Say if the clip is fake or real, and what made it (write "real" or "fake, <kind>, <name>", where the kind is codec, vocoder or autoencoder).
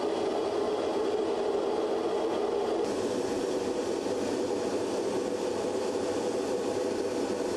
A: real